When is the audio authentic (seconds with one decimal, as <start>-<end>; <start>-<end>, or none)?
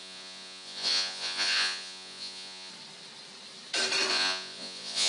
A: 2.7-4.1